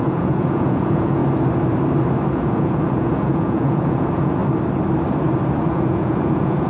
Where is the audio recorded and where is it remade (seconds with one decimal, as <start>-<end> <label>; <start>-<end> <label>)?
0.0-1.2 remade; 1.2-2.3 recorded; 2.3-4.4 remade; 4.4-5.6 recorded; 5.6-6.7 remade